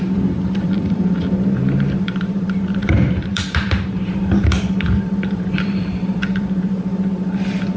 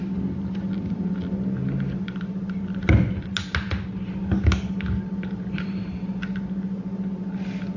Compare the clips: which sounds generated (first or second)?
first